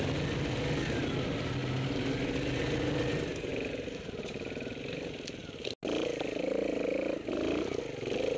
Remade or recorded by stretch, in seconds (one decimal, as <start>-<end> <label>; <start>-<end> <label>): 0.0-8.4 recorded